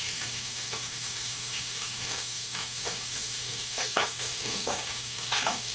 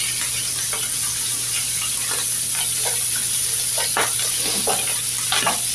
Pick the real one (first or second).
second